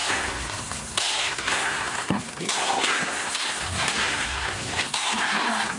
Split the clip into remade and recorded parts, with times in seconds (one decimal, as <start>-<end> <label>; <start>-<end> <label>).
0.0-5.8 remade